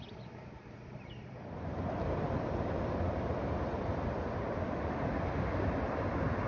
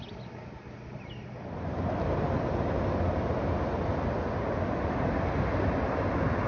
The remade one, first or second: first